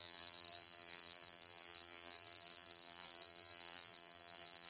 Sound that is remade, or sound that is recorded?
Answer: remade